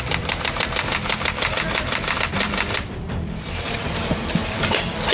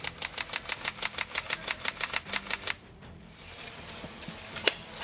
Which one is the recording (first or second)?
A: second